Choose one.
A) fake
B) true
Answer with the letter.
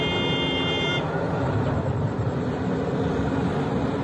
B